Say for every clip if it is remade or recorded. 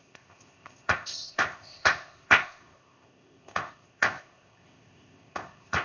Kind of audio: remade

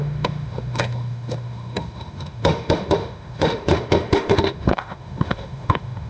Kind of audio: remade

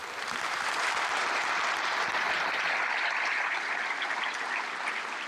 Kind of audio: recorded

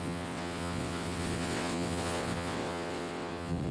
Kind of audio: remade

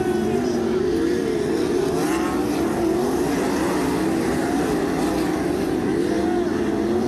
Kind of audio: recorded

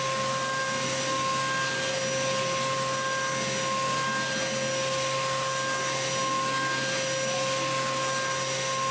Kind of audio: recorded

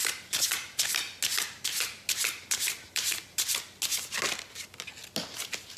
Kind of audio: recorded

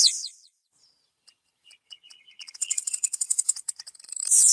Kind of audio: remade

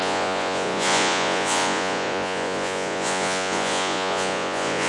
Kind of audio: remade